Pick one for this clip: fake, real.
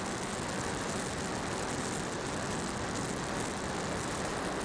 real